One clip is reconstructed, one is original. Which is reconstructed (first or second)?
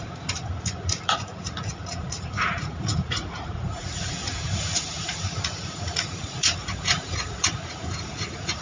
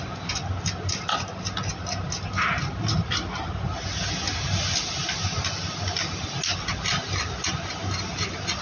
first